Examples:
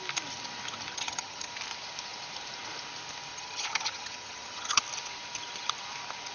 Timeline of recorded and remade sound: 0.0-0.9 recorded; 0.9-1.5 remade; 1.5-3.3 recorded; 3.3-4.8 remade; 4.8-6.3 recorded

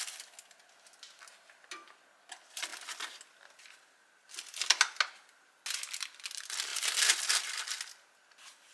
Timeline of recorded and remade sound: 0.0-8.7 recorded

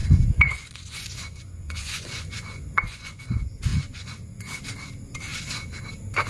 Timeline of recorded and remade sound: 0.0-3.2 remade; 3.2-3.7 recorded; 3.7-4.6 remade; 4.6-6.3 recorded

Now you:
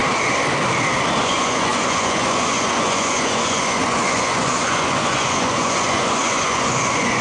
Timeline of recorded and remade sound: 0.0-1.2 recorded; 1.2-7.2 remade

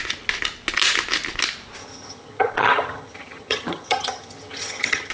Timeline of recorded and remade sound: 0.0-1.8 recorded; 1.8-5.1 remade

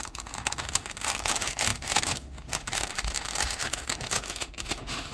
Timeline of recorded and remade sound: 0.0-5.1 remade

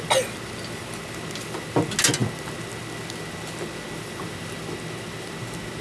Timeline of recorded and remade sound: 0.0-5.8 recorded